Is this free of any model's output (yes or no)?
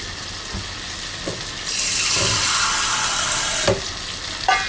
yes